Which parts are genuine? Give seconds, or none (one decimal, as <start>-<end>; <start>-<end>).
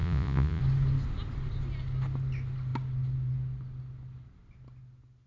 0.6-5.3